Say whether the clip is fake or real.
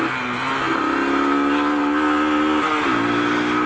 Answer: real